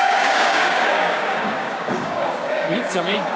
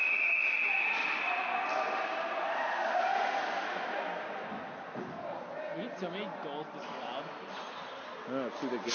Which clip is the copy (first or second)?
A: first